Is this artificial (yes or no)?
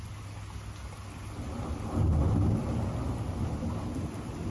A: no